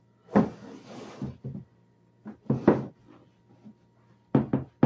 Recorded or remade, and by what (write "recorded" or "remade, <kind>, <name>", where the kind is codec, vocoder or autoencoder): recorded